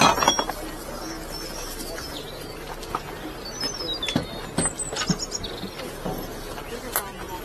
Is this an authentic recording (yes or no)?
yes